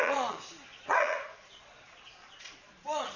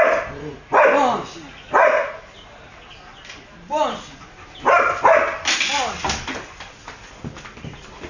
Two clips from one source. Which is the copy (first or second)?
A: first